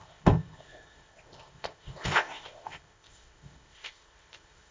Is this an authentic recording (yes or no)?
no